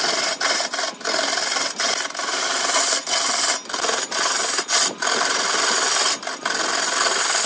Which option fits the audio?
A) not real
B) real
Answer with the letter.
B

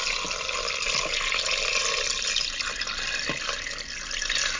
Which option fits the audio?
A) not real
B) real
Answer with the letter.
B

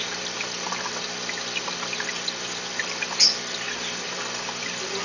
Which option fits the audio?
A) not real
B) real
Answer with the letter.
B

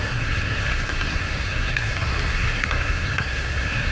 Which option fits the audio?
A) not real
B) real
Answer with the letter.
A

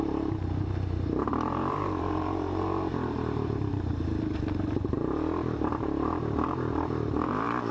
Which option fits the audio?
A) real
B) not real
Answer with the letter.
B